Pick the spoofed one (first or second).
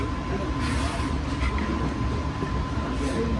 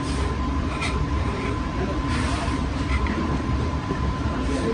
second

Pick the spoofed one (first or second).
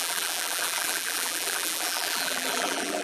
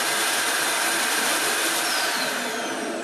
first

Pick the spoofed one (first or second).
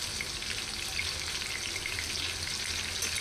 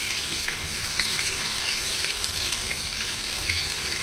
second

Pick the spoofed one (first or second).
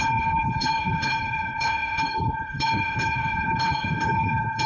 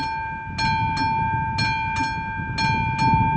first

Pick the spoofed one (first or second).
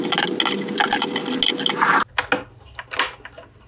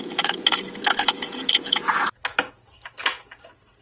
second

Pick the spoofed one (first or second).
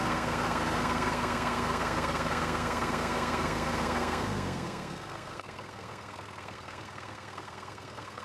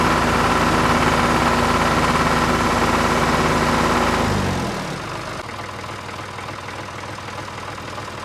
first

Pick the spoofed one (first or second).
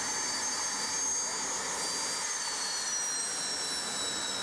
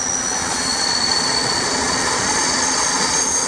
second